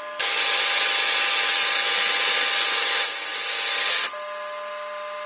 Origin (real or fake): real